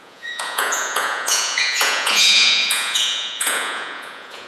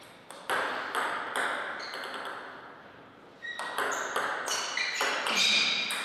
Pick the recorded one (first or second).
second